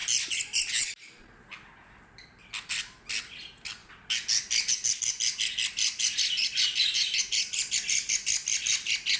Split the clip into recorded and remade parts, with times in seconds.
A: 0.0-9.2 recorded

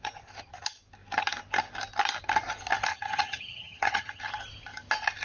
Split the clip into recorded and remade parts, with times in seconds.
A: 0.0-2.9 recorded; 2.9-4.2 remade; 4.2-5.2 recorded

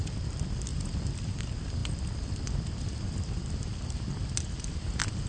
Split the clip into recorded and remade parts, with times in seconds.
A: 0.0-0.7 recorded; 0.7-1.4 remade; 1.4-5.3 recorded